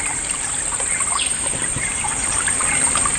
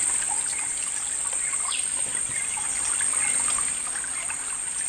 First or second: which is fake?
first